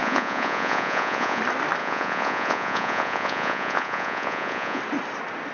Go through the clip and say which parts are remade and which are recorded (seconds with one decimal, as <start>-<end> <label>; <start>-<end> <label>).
0.0-1.4 remade; 1.4-1.8 recorded; 1.8-4.8 remade; 4.8-5.5 recorded